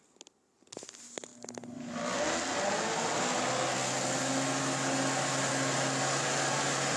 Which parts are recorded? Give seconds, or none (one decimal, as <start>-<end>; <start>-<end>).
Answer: 0.0-7.0